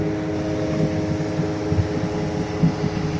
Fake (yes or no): no